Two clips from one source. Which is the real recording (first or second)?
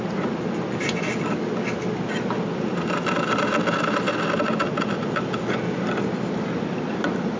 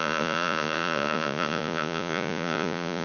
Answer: first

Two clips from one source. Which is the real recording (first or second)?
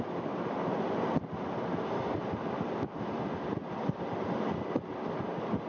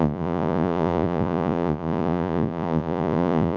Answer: first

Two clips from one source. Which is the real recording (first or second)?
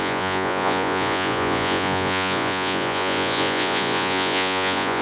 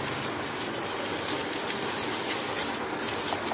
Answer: second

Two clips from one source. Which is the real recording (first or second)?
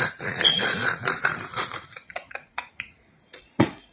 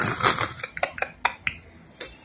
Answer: second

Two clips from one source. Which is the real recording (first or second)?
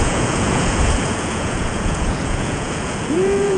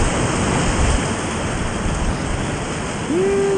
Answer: second